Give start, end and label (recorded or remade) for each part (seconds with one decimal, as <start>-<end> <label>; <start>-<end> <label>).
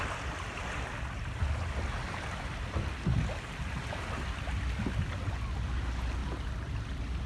0.0-7.3 recorded